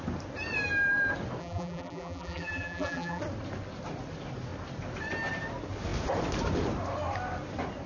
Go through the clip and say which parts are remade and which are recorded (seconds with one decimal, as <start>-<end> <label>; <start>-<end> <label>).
0.0-1.4 recorded; 1.4-3.2 remade; 3.2-7.9 recorded